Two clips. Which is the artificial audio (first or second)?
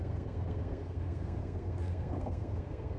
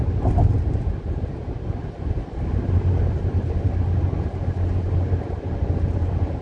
first